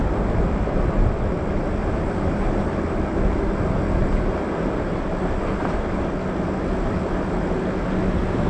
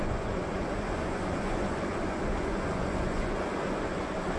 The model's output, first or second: second